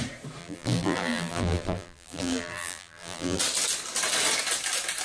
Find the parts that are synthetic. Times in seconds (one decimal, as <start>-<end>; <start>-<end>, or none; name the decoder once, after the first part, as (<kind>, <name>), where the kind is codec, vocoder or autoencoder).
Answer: 0.4-3.4 (vocoder, BigVGAN v2)